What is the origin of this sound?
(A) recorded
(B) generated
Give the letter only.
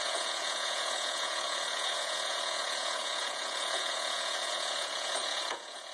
B